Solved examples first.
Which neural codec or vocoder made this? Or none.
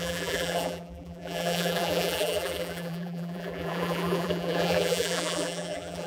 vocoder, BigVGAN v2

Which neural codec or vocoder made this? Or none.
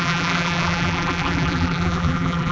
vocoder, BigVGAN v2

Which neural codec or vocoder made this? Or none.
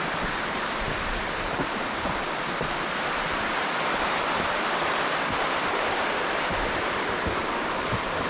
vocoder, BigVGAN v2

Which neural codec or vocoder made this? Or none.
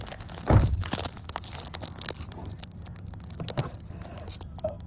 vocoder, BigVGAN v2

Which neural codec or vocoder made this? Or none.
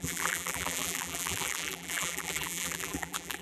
vocoder, BigVGAN v2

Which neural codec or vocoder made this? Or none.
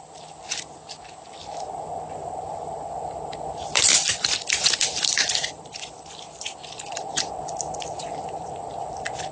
vocoder, BigVGAN v2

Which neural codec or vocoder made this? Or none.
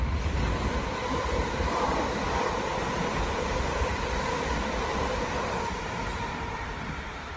vocoder, BigVGAN v2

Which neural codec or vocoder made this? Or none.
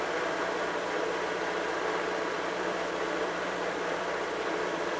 vocoder, BigVGAN v2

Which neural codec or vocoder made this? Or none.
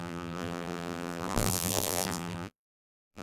vocoder, BigVGAN v2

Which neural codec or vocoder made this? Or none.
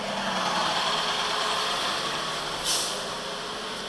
none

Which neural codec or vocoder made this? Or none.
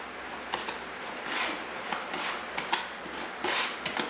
none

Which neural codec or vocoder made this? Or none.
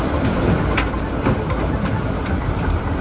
vocoder, BigVGAN v2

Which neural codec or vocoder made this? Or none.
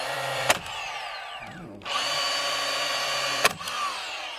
vocoder, BigVGAN v2